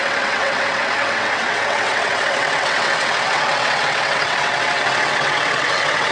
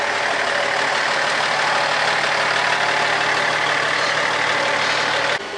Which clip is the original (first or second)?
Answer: second